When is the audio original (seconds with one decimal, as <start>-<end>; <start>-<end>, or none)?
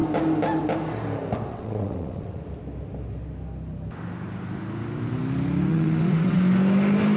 0.0-1.5; 2.4-5.7; 6.4-7.2